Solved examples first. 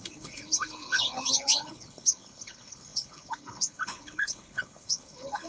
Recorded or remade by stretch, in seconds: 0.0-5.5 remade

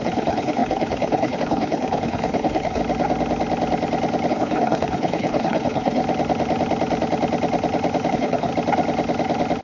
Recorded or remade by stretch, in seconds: 0.0-2.8 remade; 2.8-4.3 recorded; 4.3-6.0 remade; 6.0-8.1 recorded; 8.1-8.5 remade; 8.5-9.6 recorded

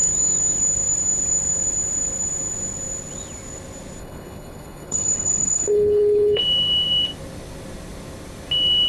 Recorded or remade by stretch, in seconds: 0.0-4.0 recorded; 4.0-6.4 remade; 6.4-8.9 recorded

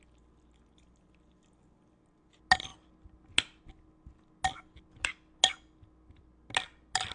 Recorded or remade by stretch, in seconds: 0.0-7.1 recorded

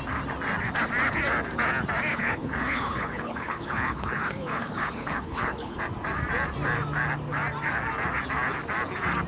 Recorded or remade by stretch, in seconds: 0.0-2.1 recorded; 2.1-5.8 remade; 5.8-9.3 recorded

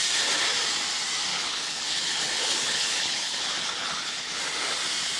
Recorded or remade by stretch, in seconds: 0.0-1.3 recorded; 1.3-4.4 remade; 4.4-5.2 recorded